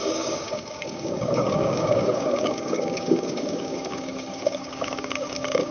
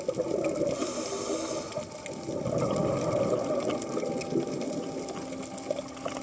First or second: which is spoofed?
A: first